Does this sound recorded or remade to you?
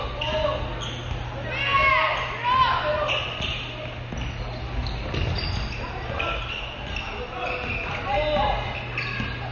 recorded